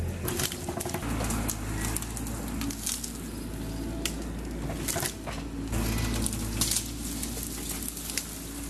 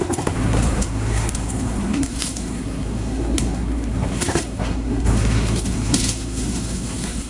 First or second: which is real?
first